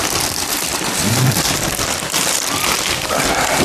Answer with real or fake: fake